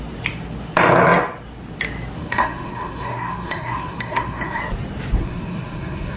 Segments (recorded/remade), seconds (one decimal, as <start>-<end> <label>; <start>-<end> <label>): 0.0-2.2 recorded; 2.2-4.6 remade; 4.6-5.2 recorded; 5.2-6.2 remade